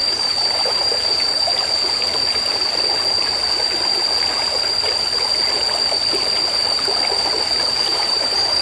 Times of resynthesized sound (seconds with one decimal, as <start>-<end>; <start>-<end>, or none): 0.0-1.4; 7.9-8.6